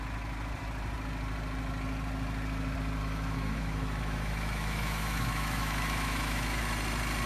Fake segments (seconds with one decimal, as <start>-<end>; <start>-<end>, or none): 3.0-6.6